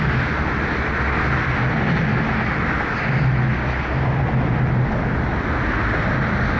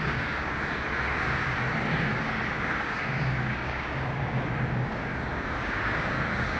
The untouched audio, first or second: first